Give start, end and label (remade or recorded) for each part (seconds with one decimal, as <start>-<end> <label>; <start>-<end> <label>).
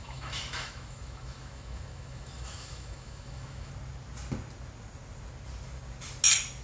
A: 0.0-3.7 remade; 3.7-6.6 recorded